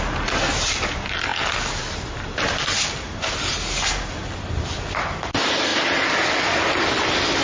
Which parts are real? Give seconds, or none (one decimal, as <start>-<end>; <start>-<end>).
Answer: 0.0-7.4